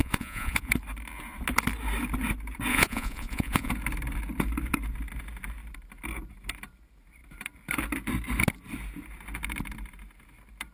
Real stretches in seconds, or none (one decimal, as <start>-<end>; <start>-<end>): 0.7-2.7; 3.7-10.7